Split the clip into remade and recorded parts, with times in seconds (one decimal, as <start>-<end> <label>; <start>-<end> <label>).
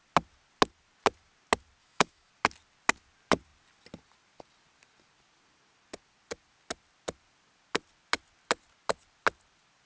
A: 0.0-1.8 recorded; 1.8-2.3 remade; 2.3-9.9 recorded